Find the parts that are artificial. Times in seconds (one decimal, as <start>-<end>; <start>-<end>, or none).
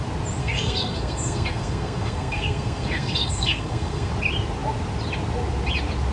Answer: 0.4-4.1